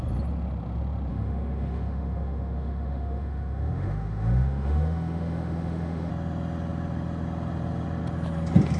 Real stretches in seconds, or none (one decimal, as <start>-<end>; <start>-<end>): 0.0-1.1; 6.1-8.8